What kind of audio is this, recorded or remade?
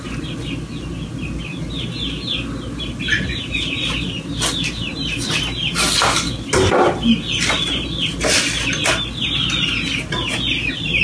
recorded